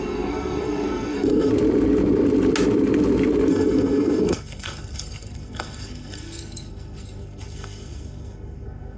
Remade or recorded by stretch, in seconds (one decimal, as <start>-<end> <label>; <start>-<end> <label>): 0.0-1.5 remade; 1.5-3.5 recorded; 3.5-9.0 remade

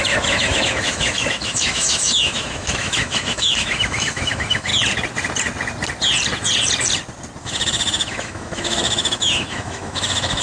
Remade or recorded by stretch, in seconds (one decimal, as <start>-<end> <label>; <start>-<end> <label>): 0.0-4.7 remade; 4.7-7.4 recorded; 7.4-10.4 remade

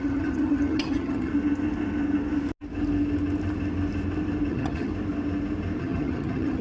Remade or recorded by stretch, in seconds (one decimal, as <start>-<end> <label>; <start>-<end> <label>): 0.0-1.3 remade; 1.3-4.5 recorded; 4.5-4.9 remade; 4.9-5.8 recorded; 5.8-6.6 remade